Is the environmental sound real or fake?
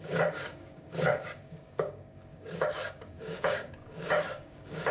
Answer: fake